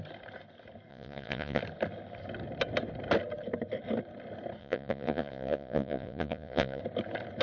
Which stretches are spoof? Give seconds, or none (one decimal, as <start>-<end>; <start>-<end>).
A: 0.9-1.6; 4.6-6.8